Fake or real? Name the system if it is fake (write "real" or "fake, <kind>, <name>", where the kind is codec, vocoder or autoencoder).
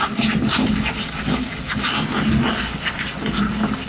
real